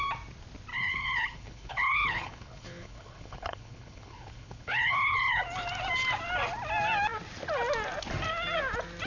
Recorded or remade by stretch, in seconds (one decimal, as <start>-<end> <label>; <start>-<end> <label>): 0.0-0.7 recorded; 0.7-5.4 remade; 5.4-9.1 recorded